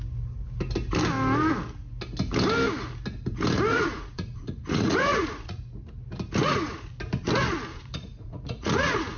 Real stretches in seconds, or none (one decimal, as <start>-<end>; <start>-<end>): 0.0-3.7; 5.6-6.4; 6.9-7.7